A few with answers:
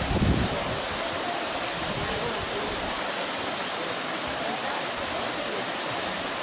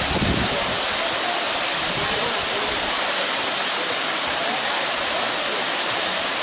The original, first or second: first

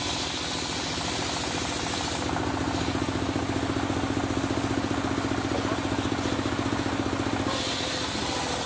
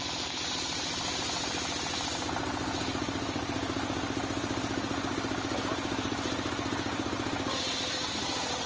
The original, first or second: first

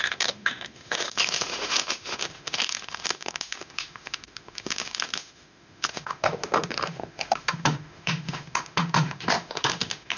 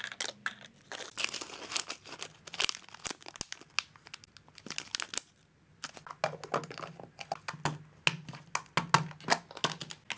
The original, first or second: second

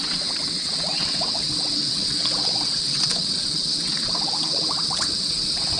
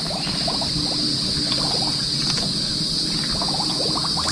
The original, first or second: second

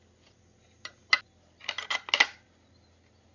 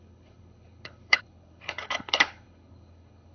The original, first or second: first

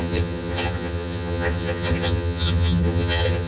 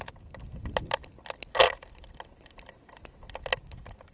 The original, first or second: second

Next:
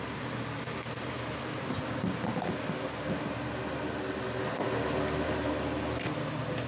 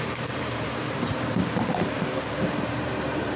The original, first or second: first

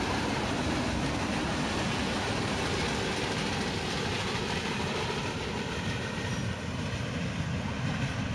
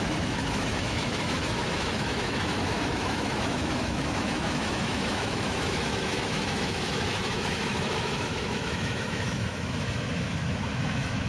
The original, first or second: first